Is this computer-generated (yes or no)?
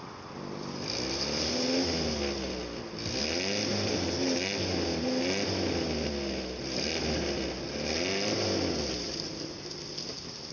no